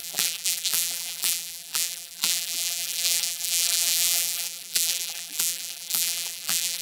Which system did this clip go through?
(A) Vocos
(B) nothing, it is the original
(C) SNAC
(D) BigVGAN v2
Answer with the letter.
D